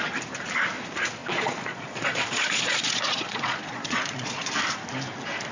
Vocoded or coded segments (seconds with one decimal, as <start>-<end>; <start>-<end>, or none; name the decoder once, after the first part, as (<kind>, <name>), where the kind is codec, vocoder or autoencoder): 1.2-4.5 (vocoder, Vocos)